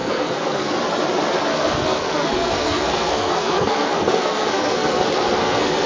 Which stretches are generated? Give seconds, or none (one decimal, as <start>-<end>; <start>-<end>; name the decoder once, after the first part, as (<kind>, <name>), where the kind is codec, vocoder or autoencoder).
0.0-0.7 (codec, SNAC); 1.5-5.0; 5.4-5.9